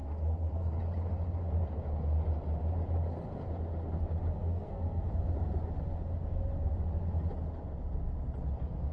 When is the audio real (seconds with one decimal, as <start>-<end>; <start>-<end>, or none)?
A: 0.8-4.4; 5.1-8.9